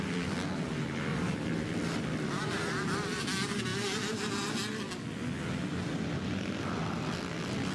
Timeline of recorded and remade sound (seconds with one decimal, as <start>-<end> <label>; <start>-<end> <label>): 0.0-1.1 recorded; 1.1-3.2 remade; 3.2-7.7 recorded